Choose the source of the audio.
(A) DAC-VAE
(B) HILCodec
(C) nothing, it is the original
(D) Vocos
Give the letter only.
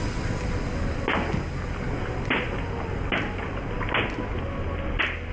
C